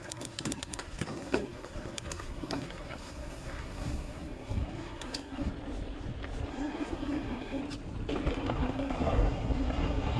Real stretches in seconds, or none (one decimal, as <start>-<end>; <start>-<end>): 5.5-6.5; 7.6-8.3

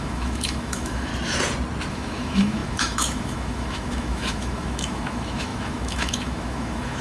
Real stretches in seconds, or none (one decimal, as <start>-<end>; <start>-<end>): 1.1-1.9

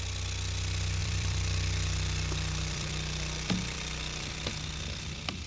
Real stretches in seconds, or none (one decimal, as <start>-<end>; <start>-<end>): 0.0-1.0; 4.3-5.5

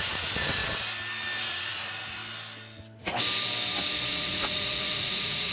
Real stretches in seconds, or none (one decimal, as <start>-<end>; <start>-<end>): 0.6-1.4; 2.2-4.1